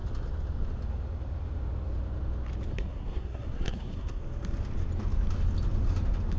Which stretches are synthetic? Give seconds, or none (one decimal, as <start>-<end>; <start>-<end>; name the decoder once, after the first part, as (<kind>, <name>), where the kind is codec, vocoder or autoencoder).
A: 2.7-4.2 (codec, SNAC)